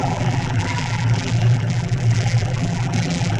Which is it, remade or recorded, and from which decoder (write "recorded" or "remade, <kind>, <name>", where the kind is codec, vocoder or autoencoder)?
remade, vocoder, BigVGAN v2